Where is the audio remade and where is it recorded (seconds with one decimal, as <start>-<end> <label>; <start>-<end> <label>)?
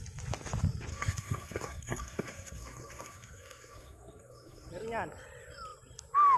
0.0-0.9 recorded; 0.9-4.7 remade; 4.7-6.4 recorded